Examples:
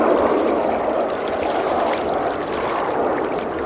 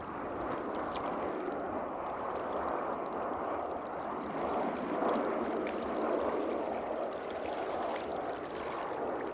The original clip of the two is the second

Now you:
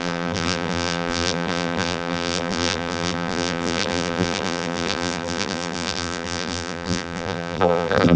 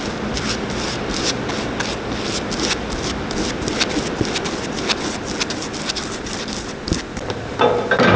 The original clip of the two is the second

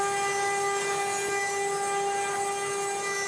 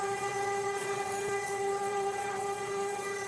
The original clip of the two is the first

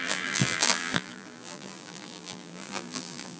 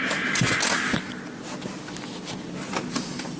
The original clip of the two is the second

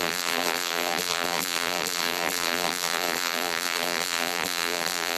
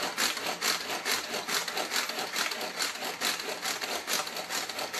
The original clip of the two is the second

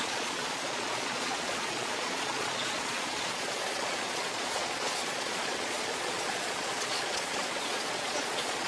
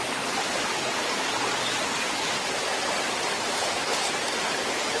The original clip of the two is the second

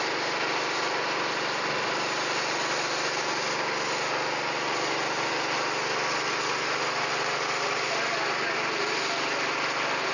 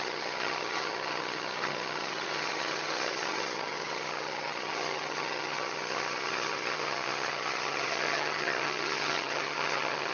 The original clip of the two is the first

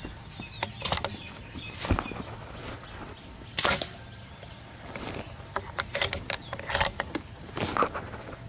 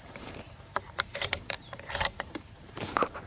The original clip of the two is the first